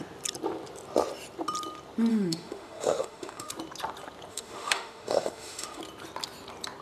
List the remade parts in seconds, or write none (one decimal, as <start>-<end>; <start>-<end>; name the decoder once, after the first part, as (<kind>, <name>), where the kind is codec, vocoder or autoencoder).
2.1-3.5 (autoencoder, DAC-VAE); 4.3-5.8